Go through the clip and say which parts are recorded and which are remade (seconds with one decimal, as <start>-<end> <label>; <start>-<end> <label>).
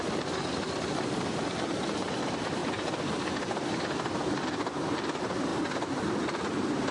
0.0-2.6 remade; 2.6-4.6 recorded; 4.6-5.5 remade; 5.5-6.5 recorded; 6.5-6.9 remade